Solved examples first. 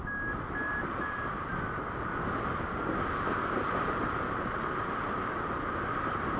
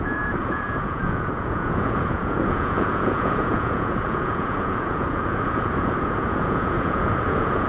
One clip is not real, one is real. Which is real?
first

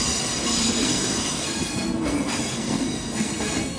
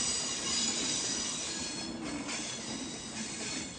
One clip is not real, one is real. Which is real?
second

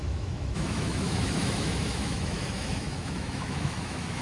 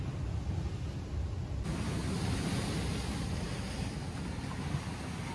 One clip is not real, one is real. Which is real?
second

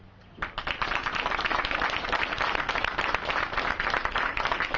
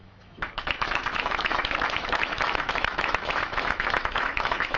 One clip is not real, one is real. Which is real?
first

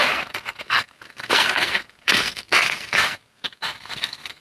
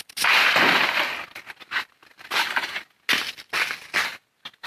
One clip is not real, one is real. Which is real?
second